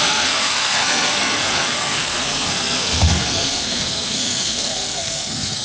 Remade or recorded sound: remade